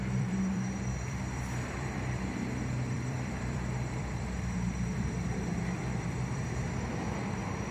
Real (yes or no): no